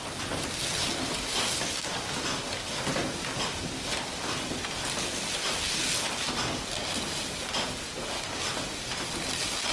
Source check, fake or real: real